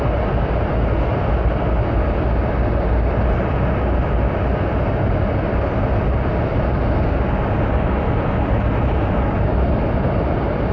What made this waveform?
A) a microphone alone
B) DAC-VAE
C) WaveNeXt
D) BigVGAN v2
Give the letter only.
A